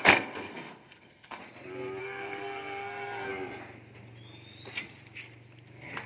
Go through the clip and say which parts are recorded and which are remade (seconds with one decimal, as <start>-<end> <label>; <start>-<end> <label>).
0.0-1.4 remade; 1.4-2.0 recorded; 2.0-3.3 remade; 3.3-6.1 recorded